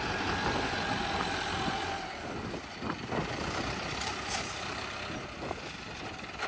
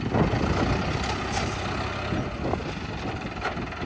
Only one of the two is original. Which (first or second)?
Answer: second